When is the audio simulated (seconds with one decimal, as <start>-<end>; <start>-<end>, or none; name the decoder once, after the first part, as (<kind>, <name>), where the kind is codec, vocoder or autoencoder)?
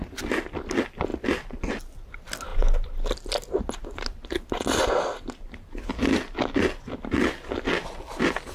none